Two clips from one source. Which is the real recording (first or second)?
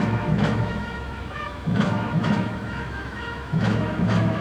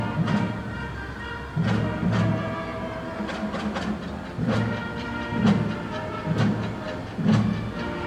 second